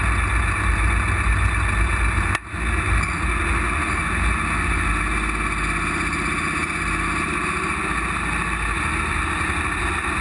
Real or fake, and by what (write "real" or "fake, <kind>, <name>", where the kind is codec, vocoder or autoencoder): real